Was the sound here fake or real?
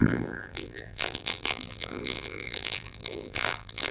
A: fake